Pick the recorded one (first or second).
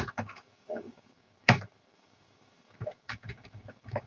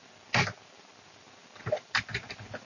second